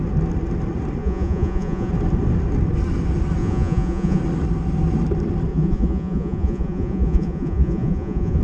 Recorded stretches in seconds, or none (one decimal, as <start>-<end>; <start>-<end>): 0.0-1.0; 1.9-3.4; 4.2-5.5